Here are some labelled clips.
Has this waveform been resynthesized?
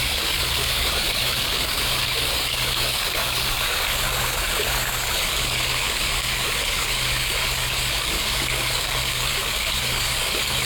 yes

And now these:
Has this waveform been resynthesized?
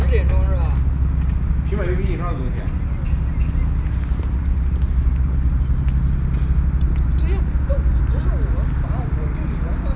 no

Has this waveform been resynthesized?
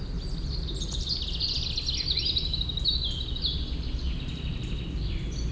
no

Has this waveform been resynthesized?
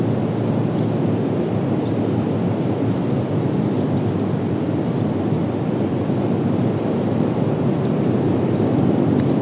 no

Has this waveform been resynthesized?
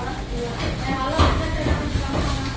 no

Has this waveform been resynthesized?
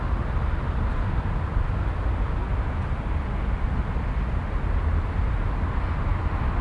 no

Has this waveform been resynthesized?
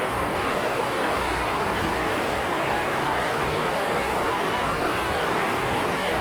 yes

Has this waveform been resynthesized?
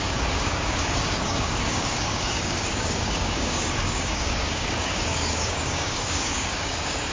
yes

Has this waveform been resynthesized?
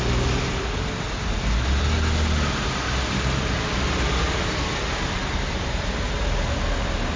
no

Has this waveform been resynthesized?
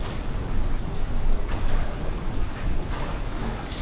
yes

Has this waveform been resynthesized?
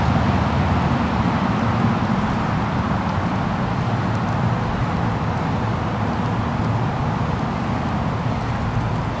no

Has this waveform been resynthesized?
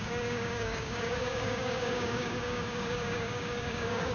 yes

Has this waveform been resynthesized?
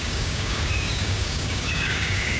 yes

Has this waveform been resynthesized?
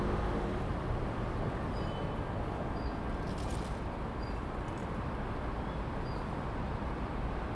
no